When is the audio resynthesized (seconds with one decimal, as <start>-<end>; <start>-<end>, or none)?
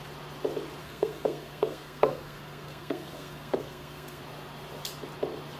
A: 0.8-4.2